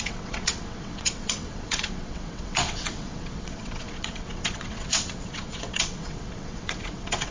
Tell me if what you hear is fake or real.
fake